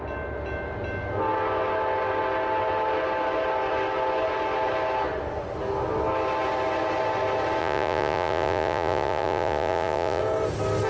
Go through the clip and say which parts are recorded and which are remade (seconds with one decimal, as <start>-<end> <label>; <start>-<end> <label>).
0.0-7.6 recorded; 7.6-10.2 remade; 10.2-10.9 recorded